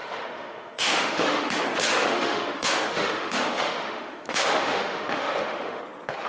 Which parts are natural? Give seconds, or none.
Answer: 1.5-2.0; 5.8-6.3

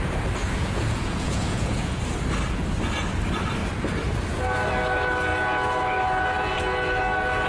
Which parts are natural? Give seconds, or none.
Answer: 0.0-0.4; 2.0-7.5

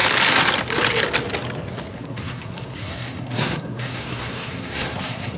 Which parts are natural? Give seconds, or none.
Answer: 0.0-1.9

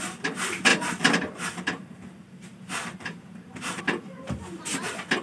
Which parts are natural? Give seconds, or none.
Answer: 0.0-0.7; 3.8-5.2

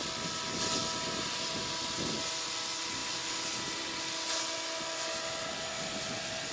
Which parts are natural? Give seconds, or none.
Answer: 0.0-6.5

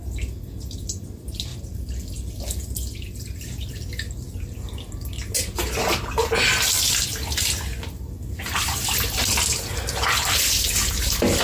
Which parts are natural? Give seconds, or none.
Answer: 0.0-11.4